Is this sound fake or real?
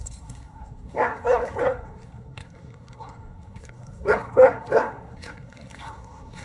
fake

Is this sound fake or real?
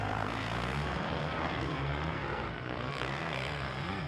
fake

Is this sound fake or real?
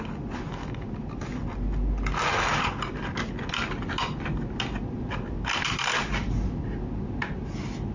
real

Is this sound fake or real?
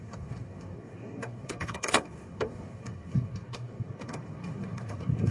fake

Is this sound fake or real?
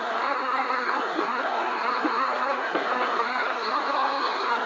fake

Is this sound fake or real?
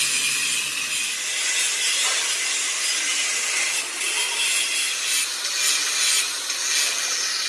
real